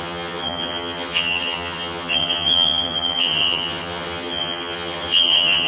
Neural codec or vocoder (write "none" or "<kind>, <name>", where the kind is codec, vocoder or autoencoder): vocoder, HiFi-GAN